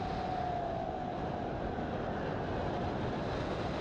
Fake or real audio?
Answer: real